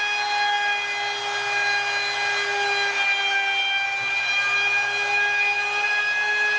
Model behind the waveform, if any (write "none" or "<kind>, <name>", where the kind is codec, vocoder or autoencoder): none